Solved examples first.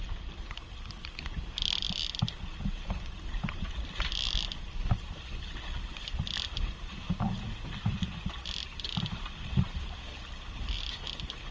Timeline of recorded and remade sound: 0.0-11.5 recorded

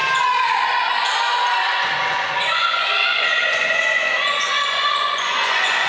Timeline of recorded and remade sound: 0.0-1.5 recorded; 1.5-5.9 remade

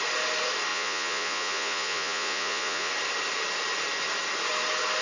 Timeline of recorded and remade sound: 0.0-0.7 recorded; 0.7-2.9 remade; 2.9-5.0 recorded

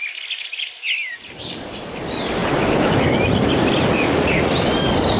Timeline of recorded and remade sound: 0.0-3.9 recorded; 3.9-4.5 remade; 4.5-5.2 recorded

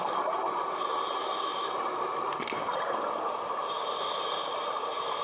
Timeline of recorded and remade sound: 0.0-5.2 recorded